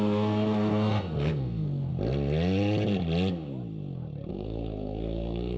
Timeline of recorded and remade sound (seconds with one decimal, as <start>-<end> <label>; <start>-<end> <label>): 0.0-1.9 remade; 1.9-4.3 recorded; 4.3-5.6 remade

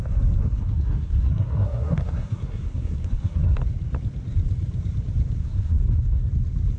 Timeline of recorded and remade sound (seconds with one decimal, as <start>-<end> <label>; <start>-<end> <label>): 0.0-0.4 recorded; 0.4-3.6 remade; 3.6-5.4 recorded; 5.4-6.3 remade; 6.3-6.8 recorded

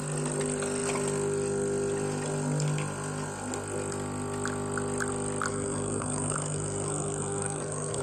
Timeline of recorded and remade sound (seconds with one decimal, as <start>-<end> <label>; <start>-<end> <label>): 0.0-5.5 recorded; 5.5-8.0 remade